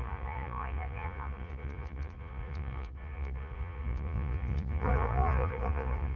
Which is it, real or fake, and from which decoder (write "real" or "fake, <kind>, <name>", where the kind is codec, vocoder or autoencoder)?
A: fake, vocoder, Vocos